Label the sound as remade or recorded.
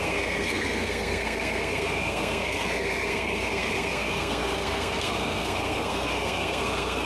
remade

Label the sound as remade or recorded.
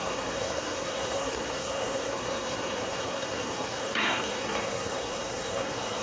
remade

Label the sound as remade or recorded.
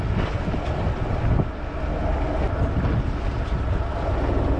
recorded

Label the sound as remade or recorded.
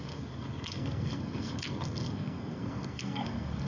remade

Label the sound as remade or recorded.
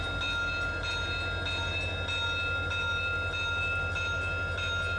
recorded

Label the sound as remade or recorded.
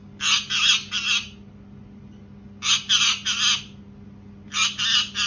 recorded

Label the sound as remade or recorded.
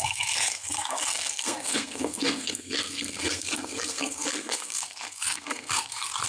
remade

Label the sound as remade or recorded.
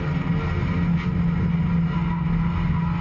recorded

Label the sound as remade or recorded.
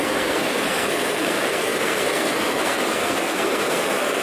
remade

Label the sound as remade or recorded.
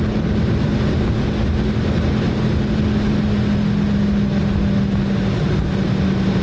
recorded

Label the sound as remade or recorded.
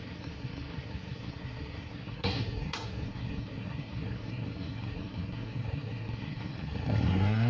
remade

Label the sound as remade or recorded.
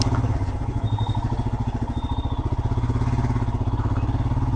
recorded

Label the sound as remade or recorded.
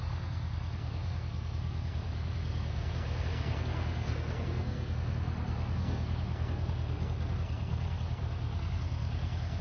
remade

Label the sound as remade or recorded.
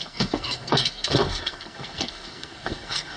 remade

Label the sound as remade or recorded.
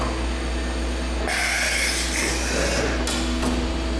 recorded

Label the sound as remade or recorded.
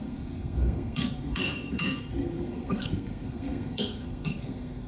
remade